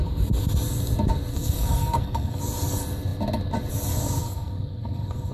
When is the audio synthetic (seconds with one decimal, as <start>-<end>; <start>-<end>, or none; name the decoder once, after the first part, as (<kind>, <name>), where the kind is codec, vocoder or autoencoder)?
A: 1.3-2.4 (codec, SNAC); 4.2-5.3